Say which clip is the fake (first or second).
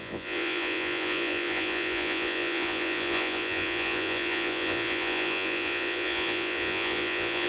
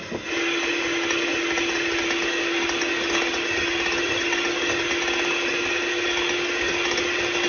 first